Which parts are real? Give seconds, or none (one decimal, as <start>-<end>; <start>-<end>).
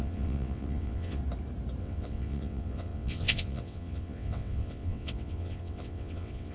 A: 1.2-1.8